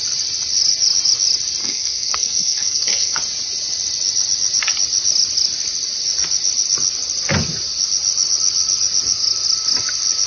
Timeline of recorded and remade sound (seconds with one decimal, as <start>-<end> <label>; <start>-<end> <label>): 0.0-1.6 recorded; 1.6-3.2 remade; 3.2-10.3 recorded